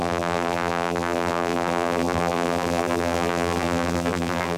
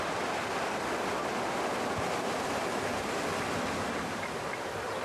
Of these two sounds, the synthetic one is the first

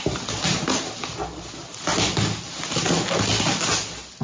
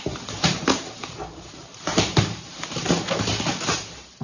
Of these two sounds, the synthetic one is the second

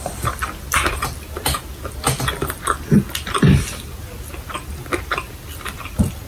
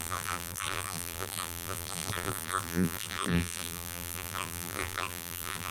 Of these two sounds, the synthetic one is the second